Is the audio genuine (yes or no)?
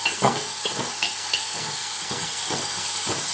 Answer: no